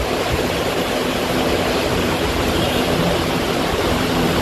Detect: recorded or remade remade